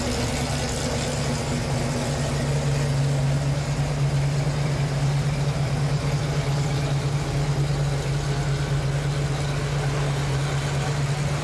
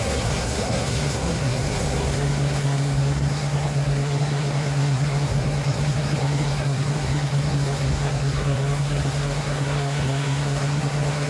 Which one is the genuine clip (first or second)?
first